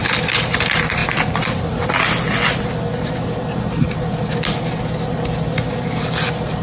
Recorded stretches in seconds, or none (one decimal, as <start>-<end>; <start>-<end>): 0.0-6.6